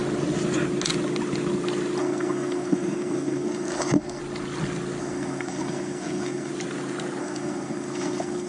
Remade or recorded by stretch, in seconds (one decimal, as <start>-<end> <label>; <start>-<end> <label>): 0.0-2.0 recorded; 2.0-4.2 remade; 4.2-5.0 recorded; 5.0-6.5 remade; 6.5-7.2 recorded; 7.2-8.5 remade